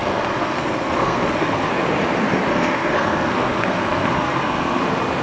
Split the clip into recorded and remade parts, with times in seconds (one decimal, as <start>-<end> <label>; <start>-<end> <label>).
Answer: 0.0-1.7 remade; 1.7-2.5 recorded; 2.5-4.8 remade; 4.8-5.2 recorded